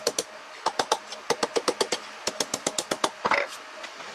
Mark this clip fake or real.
real